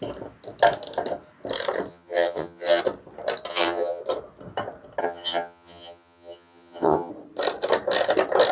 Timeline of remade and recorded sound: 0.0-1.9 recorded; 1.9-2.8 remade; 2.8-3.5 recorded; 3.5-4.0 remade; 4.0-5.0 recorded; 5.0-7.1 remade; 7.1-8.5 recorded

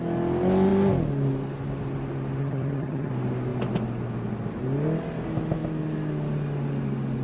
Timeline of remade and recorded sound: 0.0-2.4 recorded; 2.4-3.1 remade; 3.1-7.2 recorded

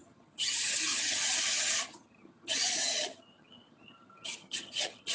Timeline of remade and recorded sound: 0.0-5.1 remade